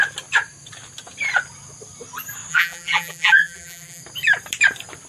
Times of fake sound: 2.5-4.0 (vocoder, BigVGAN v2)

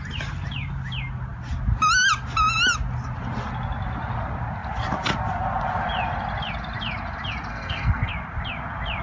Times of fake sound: 7.5-8.1 (codec, SNAC)

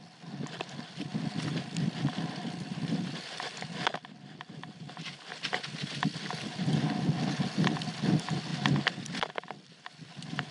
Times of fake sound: none

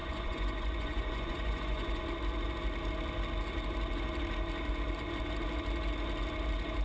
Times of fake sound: 0.0-2.0 (vocoder, Vocos)

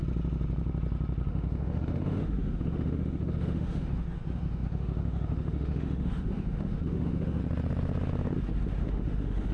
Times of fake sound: 1.3-7.4 (autoencoder, DAC-VAE); 8.8-9.5

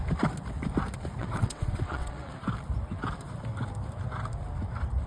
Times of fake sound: 1.2-2.3 (vocoder, WaveNeXt)